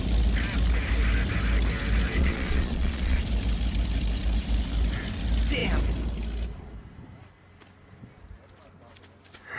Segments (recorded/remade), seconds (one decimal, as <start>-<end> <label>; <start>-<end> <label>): 0.0-2.2 recorded; 2.2-3.2 remade; 3.2-9.6 recorded